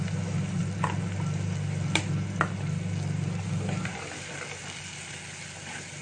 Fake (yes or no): no